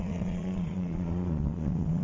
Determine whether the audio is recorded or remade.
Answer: remade